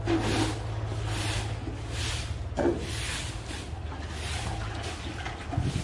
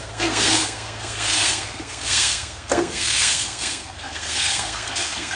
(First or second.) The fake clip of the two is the second